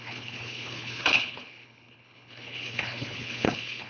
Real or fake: fake